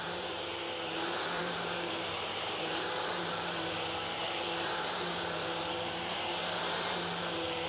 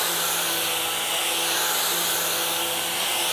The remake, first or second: first